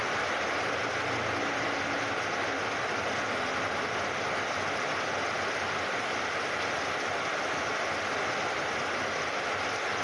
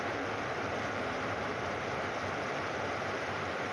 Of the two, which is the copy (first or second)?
second